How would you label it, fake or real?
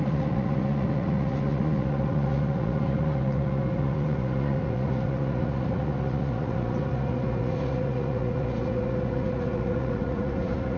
fake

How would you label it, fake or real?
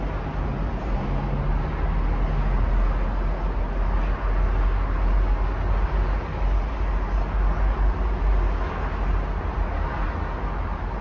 real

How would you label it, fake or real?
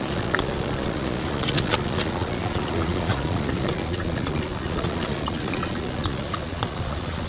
fake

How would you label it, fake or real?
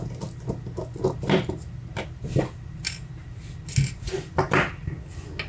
real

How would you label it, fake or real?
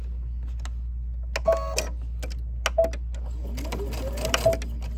real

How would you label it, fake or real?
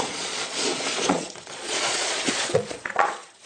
fake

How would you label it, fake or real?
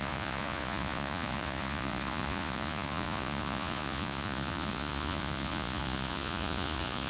fake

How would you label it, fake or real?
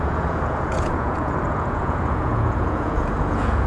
fake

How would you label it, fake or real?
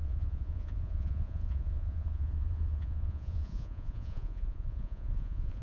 fake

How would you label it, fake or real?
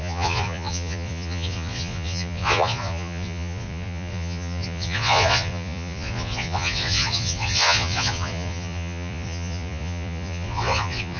fake